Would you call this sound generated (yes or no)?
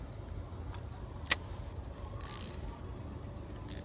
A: no